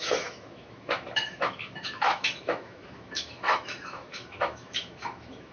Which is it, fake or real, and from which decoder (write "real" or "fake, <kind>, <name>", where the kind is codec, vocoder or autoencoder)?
fake, autoencoder, DAC-VAE